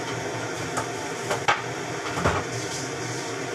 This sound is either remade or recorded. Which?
recorded